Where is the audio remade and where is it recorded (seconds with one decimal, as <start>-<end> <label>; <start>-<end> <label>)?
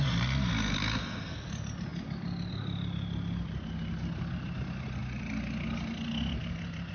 0.0-6.9 recorded